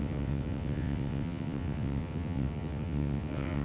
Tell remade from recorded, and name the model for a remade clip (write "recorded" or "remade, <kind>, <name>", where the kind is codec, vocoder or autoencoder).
remade, vocoder, WaveNeXt